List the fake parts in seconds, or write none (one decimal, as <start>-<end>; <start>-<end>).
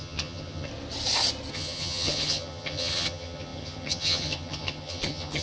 0.0-0.7; 1.5-5.4